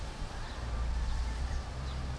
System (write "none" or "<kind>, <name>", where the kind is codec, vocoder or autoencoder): none